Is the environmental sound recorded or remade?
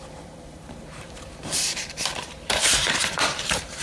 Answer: remade